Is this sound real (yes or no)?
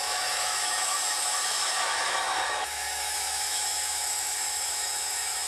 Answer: no